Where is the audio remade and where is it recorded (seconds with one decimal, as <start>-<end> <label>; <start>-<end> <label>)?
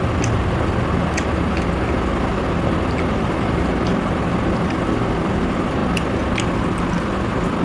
0.0-7.6 recorded